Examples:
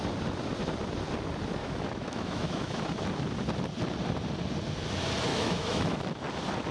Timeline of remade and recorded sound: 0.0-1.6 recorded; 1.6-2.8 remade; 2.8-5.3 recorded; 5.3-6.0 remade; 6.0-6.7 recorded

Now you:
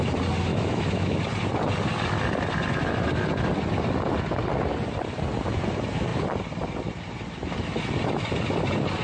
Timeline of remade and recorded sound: 0.0-0.5 recorded; 0.5-1.2 remade; 1.2-9.0 recorded

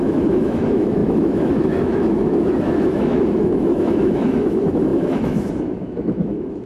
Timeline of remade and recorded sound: 0.0-6.7 remade

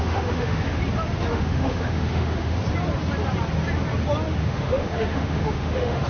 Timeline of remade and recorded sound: 0.0-0.8 remade; 0.8-1.3 recorded; 1.3-2.6 remade; 2.6-4.4 recorded; 4.4-6.1 remade

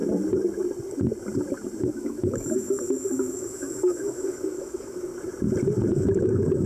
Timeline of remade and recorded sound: 0.0-1.8 recorded; 1.8-5.1 remade; 5.1-5.9 recorded; 5.9-6.7 remade